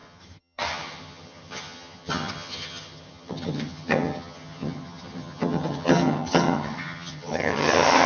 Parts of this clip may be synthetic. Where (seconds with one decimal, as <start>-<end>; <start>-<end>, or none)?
0.0-8.1